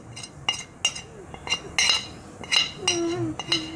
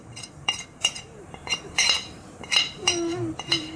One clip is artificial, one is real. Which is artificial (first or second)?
second